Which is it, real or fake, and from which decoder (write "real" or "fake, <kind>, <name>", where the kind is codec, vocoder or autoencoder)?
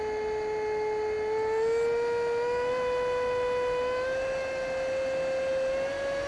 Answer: real